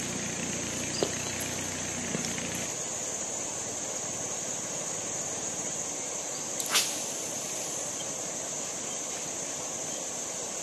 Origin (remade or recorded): recorded